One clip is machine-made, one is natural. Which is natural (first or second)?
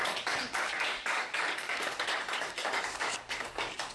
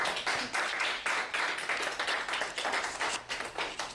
second